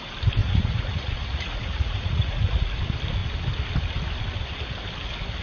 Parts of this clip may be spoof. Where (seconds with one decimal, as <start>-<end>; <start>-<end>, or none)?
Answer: 0.4-2.4